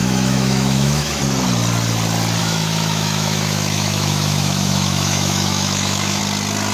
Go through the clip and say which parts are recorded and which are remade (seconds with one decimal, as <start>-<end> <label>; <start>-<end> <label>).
0.0-1.2 remade; 1.2-2.4 recorded; 2.4-6.2 remade; 6.2-6.7 recorded